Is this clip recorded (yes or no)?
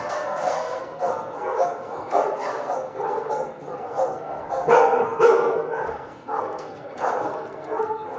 no